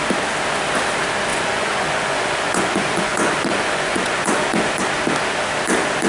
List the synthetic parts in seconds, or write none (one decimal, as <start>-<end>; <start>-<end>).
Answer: 1.3-4.7

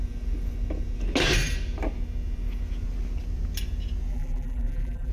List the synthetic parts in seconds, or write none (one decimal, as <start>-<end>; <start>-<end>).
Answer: 4.1-5.1

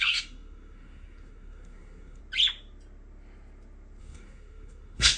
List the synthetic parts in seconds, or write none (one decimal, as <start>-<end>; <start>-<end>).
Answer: 0.0-2.2; 4.0-5.2

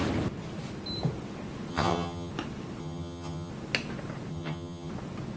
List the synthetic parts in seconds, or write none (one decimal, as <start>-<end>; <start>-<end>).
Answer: 1.7-2.3; 2.8-3.5; 4.3-4.9

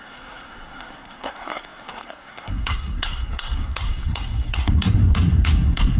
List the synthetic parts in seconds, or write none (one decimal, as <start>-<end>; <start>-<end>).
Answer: 0.0-6.0

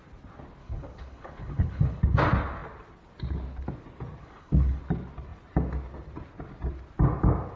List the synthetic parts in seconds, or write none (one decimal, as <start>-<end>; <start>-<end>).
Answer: 0.6-2.0; 4.2-4.8

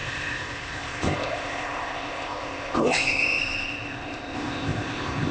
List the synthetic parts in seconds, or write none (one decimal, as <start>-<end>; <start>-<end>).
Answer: 0.0-5.3

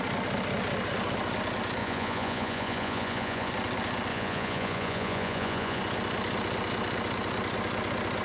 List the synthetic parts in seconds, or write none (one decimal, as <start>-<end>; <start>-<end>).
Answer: 1.8-3.5; 4.1-5.8